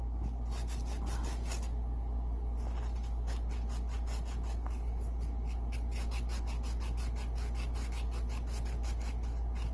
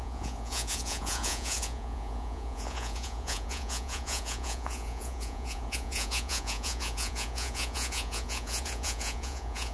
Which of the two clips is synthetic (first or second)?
second